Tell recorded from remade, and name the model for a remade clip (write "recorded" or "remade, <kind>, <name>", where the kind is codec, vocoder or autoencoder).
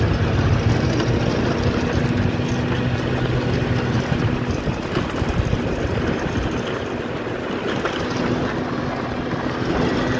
recorded